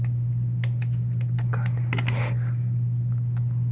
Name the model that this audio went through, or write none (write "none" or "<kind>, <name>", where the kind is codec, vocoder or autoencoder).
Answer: none